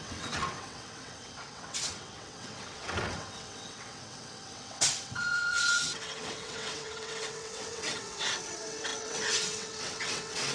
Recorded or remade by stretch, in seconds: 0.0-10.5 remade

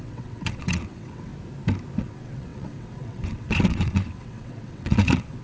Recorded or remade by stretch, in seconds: 0.0-1.3 remade; 1.3-2.0 recorded; 2.0-5.4 remade